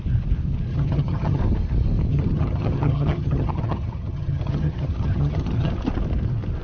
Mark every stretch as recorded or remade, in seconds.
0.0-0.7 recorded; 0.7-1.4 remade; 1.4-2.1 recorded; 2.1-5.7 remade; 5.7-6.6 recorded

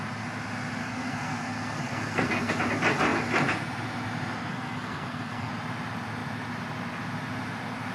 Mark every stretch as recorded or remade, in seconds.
0.0-0.8 recorded; 0.8-2.5 remade; 2.5-4.5 recorded; 4.5-5.5 remade; 5.5-7.9 recorded

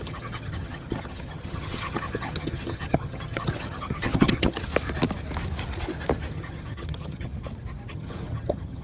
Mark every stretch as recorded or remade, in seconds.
0.0-4.7 remade; 4.7-6.3 recorded; 6.3-7.3 remade; 7.3-7.9 recorded; 7.9-8.8 remade

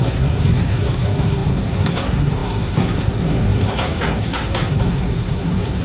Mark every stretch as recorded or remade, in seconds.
0.0-5.8 remade

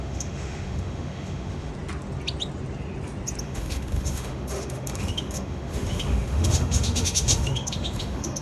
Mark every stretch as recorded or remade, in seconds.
0.0-1.7 remade; 1.7-3.4 recorded; 3.4-8.4 remade

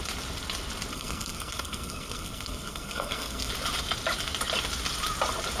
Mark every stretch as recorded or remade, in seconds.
0.0-0.9 recorded; 0.9-3.5 remade; 3.5-5.6 recorded